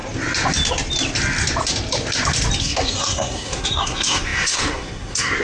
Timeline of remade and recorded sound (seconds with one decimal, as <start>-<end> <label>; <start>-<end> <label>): 0.0-2.6 recorded; 2.6-5.4 remade